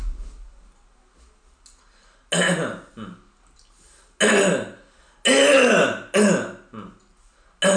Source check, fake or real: real